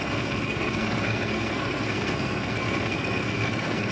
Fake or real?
fake